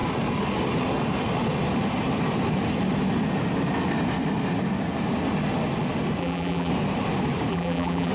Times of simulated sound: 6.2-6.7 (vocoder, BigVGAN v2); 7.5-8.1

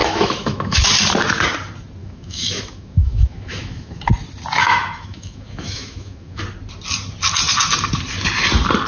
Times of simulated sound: 0.0-0.8 (autoencoder, DAC-VAE); 2.0-4.0; 4.6-6.4

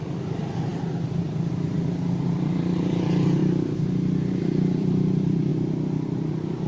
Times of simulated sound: 0.0-3.4 (vocoder, BigVGAN v2); 4.4-5.5

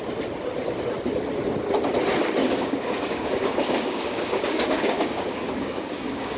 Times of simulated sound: 2.4-6.4 (codec, DAC)

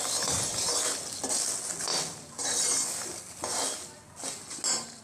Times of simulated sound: none

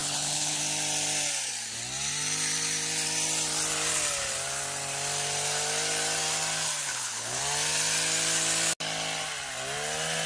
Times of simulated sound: 0.0-0.6 (codec, HILCodec); 6.8-7.4